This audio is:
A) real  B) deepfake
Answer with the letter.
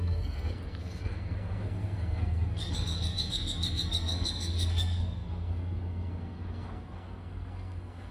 B